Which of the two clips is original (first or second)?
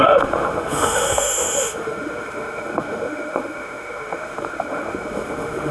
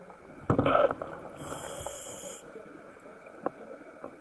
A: second